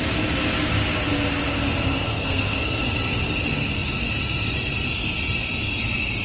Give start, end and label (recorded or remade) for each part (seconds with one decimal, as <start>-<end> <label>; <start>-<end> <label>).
0.0-2.1 recorded; 2.1-2.8 remade; 2.8-6.2 recorded